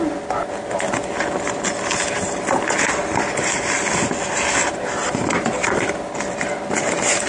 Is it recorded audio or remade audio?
recorded